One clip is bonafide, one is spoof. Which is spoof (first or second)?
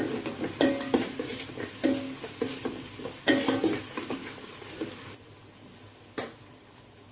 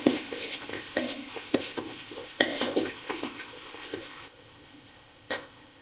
second